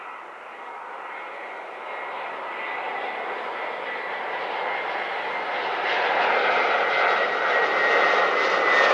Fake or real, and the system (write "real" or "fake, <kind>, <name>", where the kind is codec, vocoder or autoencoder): real